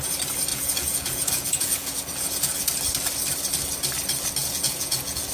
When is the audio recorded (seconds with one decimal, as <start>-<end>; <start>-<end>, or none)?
0.0-0.5; 2.5-4.4